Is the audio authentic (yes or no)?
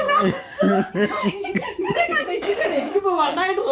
no